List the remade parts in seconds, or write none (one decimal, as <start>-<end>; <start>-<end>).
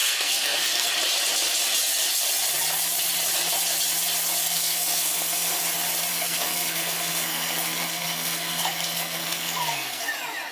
0.0-0.9; 4.4-5.6; 6.1-10.1